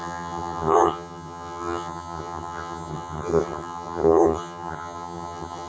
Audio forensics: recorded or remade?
remade